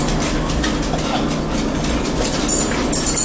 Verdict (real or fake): real